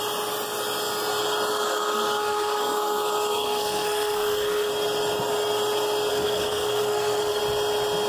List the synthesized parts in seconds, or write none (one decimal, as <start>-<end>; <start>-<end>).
1.5-4.7; 6.1-7.4